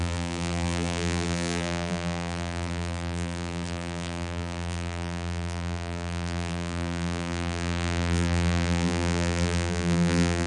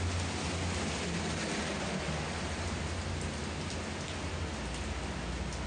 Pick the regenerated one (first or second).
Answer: first